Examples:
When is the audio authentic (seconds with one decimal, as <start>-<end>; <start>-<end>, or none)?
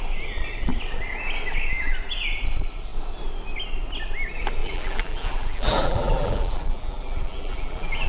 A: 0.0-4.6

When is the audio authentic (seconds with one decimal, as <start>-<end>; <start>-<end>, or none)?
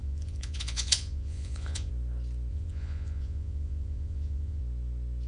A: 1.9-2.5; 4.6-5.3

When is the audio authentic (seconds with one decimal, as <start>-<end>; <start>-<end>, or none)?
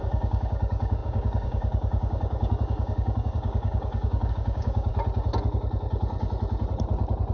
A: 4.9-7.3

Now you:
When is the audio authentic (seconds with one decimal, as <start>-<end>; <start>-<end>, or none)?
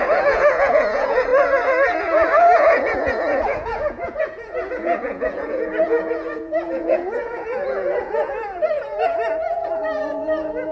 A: 1.3-2.0